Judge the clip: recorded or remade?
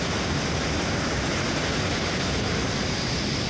recorded